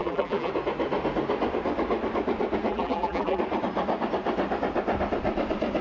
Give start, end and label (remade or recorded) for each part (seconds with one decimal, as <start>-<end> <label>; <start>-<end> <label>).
0.0-0.5 remade; 0.5-2.7 recorded; 2.7-3.4 remade; 3.4-5.8 recorded